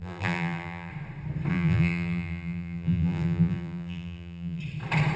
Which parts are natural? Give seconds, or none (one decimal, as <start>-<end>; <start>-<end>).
0.9-1.5; 4.6-5.2